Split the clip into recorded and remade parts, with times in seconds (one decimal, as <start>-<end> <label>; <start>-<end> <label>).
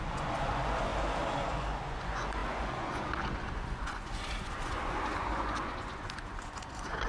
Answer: 0.0-0.9 remade; 0.9-1.4 recorded; 1.4-7.1 remade